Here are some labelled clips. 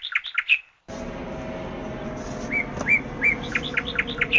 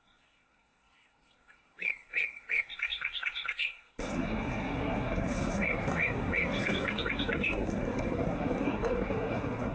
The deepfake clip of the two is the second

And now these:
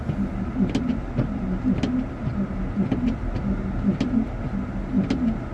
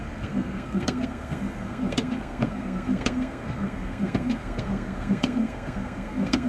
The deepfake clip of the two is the second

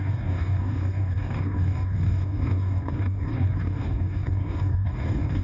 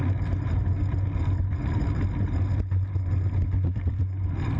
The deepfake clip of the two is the first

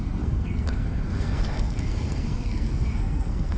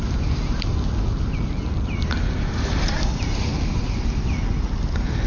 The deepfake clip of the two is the first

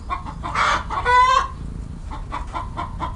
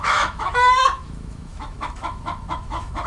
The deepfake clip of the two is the second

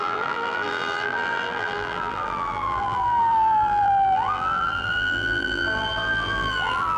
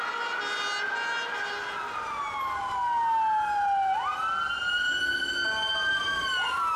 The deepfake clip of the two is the first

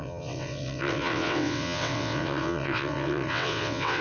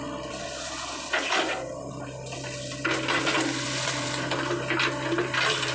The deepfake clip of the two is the first